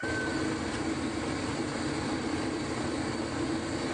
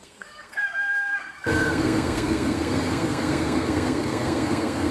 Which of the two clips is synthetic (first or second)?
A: second